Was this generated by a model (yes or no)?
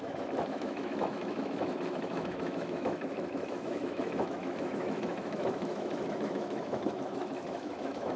yes